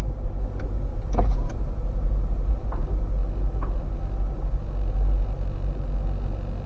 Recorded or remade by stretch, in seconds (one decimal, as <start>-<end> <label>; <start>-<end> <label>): 0.0-0.9 recorded; 0.9-2.5 remade; 2.5-6.7 recorded